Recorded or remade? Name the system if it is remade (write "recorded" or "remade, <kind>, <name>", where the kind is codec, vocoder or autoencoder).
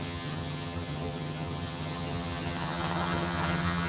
remade, vocoder, HiFi-GAN